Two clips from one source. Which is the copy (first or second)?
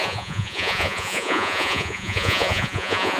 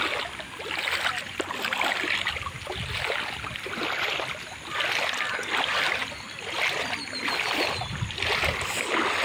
first